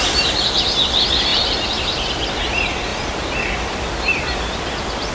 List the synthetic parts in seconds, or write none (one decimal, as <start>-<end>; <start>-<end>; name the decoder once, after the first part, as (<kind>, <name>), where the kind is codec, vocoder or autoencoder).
none